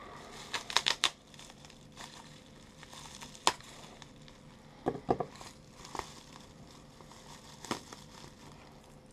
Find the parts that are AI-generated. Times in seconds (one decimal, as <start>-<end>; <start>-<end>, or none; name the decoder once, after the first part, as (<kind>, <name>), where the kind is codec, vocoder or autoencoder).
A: 0.0-7.9 (vocoder, BigVGAN v2)